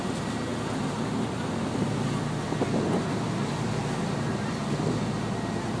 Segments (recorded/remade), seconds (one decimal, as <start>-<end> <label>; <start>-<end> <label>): 0.0-5.8 recorded

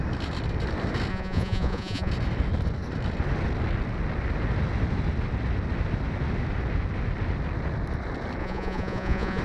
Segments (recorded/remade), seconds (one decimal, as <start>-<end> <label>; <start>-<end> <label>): 0.0-1.1 recorded; 1.1-2.1 remade; 2.1-8.4 recorded; 8.4-9.4 remade

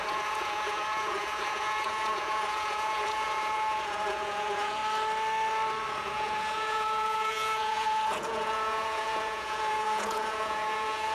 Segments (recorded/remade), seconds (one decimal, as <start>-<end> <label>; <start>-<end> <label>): 0.0-4.8 remade; 4.8-5.9 recorded; 5.9-11.1 remade

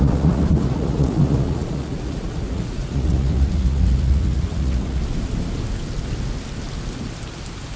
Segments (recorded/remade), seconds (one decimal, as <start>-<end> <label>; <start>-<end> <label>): 0.0-5.0 remade; 5.0-7.8 recorded

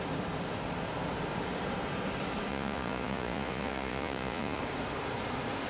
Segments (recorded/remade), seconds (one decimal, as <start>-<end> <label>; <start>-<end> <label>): 0.0-2.5 recorded; 2.5-4.6 remade; 4.6-5.7 recorded

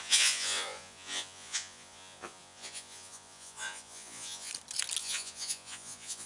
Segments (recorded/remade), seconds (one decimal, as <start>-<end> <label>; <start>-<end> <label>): 0.0-4.5 remade; 4.5-5.0 recorded; 5.0-6.3 remade